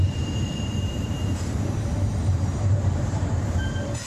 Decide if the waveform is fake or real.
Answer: fake